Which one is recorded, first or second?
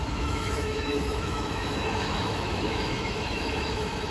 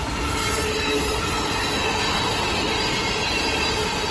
second